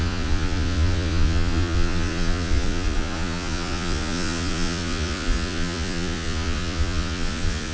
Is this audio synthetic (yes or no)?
yes